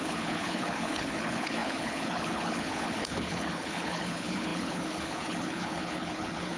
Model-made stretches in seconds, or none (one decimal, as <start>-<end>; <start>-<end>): 0.0-6.6